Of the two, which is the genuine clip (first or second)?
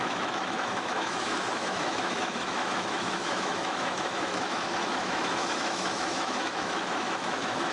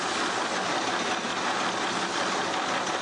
second